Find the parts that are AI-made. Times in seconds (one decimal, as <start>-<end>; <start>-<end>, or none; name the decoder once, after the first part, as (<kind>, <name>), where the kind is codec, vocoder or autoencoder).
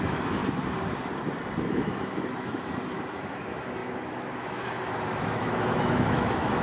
0.0-0.4 (autoencoder, DAC-VAE); 1.6-6.6